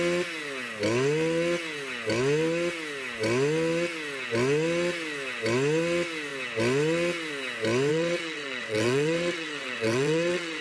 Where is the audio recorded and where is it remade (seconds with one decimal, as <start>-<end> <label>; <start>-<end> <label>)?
0.0-7.9 recorded; 7.9-10.6 remade